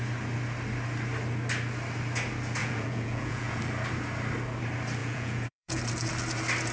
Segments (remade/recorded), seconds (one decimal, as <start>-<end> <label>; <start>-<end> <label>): 0.0-2.6 recorded; 2.6-3.6 remade; 3.6-5.0 recorded; 5.0-5.8 remade; 5.8-6.7 recorded